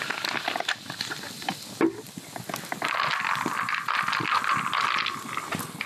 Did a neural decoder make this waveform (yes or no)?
no